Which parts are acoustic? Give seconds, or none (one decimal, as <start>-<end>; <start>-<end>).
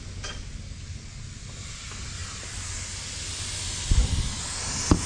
0.0-5.1